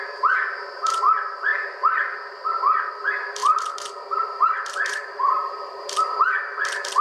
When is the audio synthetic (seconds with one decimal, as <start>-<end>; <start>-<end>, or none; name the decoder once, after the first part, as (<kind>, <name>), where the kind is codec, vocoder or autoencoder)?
3.4-5.5 (vocoder, BigVGAN v2)